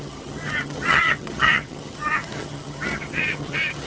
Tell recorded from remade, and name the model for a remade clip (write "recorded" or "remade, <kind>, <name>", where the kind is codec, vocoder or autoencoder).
remade, vocoder, HiFi-GAN